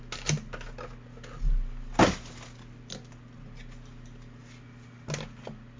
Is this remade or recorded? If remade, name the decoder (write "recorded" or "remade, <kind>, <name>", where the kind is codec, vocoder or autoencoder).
recorded